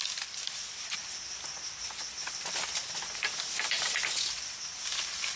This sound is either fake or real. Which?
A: real